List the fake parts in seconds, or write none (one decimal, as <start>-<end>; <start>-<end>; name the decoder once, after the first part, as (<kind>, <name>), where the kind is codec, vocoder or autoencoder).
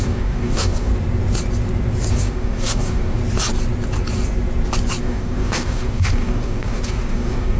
0.0-0.9 (codec, DAC); 2.1-3.2; 5.0-7.6